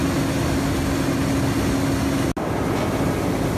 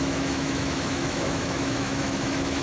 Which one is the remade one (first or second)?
second